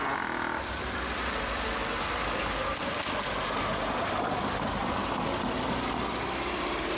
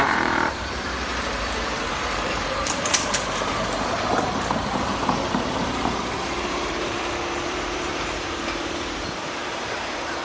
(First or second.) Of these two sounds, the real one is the first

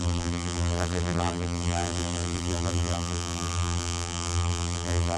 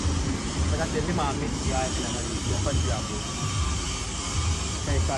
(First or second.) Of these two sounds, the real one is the second